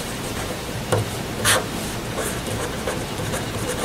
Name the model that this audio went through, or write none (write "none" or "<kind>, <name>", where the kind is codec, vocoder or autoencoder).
vocoder, BigVGAN v2